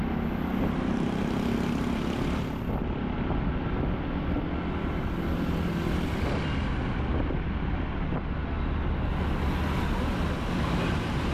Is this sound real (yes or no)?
yes